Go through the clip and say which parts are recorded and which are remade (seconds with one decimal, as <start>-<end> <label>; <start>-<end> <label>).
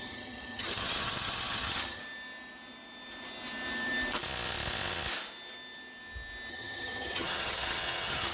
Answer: 0.0-2.0 remade; 2.0-6.5 recorded; 6.5-8.3 remade